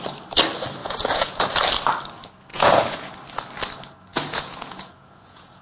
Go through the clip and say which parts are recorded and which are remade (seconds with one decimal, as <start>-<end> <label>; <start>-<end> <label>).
0.0-0.8 recorded; 0.8-1.5 remade; 1.5-2.5 recorded; 2.5-3.1 remade; 3.1-4.1 recorded; 4.1-5.6 remade